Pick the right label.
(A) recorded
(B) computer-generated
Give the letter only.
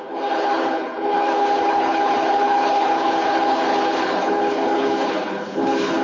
B